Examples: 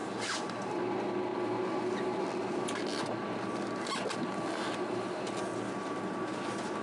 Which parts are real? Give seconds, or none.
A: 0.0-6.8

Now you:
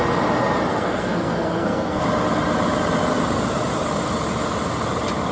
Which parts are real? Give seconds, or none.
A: 0.0-0.7; 2.0-5.3

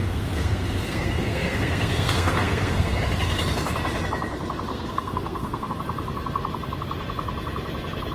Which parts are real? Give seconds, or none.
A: 3.0-4.7; 5.7-8.1